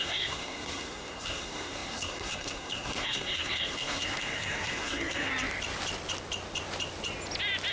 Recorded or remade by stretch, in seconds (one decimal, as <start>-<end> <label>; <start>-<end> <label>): 0.0-5.3 remade; 5.3-7.7 recorded

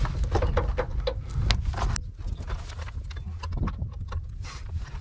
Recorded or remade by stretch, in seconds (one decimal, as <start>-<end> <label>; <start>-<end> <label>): 0.0-5.0 recorded

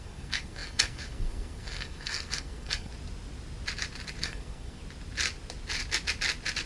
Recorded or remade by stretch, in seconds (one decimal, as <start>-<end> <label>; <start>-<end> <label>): 0.0-2.9 remade; 2.9-4.2 recorded; 4.2-4.8 remade; 4.8-6.7 recorded

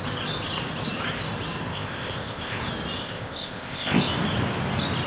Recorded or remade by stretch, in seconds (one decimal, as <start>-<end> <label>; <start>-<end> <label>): 0.0-1.7 recorded; 1.7-2.6 remade; 2.6-3.0 recorded; 3.0-4.1 remade; 4.1-5.1 recorded

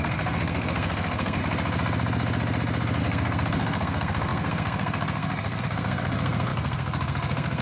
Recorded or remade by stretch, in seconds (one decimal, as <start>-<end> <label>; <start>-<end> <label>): 0.0-1.4 remade; 1.4-3.0 recorded; 3.0-7.6 remade

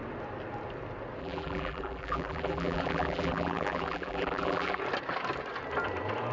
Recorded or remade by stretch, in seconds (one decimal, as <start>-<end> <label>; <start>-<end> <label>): 0.0-1.2 recorded; 1.2-4.8 remade; 4.8-6.3 recorded